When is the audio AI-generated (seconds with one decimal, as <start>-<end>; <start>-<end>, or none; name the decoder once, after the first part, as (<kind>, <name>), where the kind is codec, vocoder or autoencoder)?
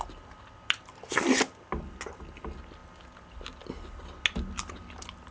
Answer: none